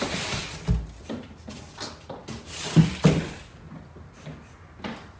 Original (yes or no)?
yes